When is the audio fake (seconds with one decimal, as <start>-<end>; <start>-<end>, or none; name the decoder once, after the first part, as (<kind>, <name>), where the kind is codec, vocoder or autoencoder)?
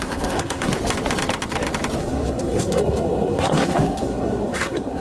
0.0-0.7 (codec, SNAC); 2.0-5.0